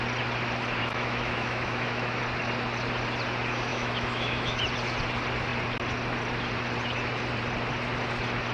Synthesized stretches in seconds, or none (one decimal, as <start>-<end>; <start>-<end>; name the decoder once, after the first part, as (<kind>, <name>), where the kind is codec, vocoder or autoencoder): 0.8-2.2 (autoencoder, DAC-VAE); 3.7-4.6